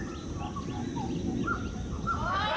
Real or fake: real